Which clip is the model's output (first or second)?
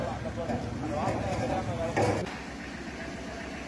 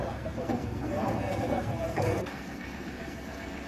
second